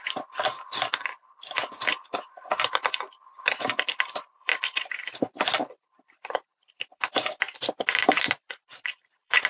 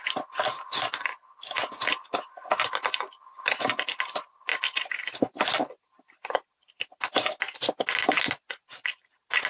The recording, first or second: second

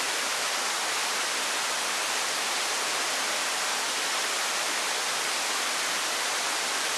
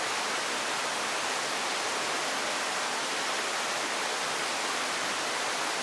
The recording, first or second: second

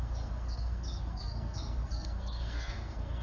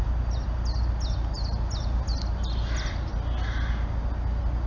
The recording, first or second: second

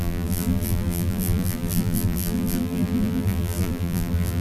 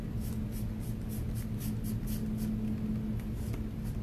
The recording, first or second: second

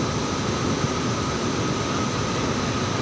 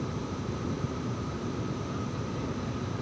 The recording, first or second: first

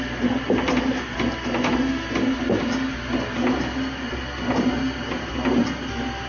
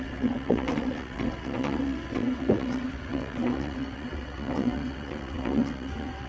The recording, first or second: first